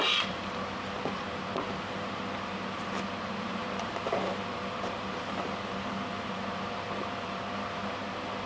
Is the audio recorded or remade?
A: remade